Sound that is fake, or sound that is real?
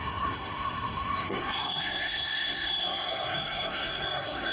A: fake